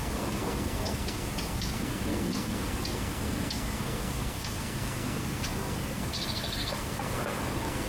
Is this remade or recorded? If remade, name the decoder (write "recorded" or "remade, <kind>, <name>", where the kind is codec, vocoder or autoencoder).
remade, codec, SNAC